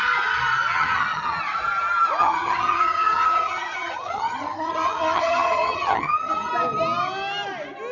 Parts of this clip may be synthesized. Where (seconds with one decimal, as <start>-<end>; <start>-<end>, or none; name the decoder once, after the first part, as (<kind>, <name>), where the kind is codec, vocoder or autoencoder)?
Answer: 0.7-1.4 (vocoder, HiFi-GAN); 2.2-6.5